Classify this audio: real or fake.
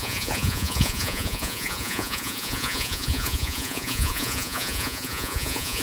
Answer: fake